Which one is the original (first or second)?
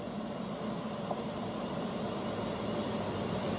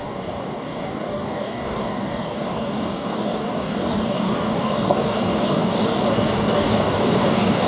first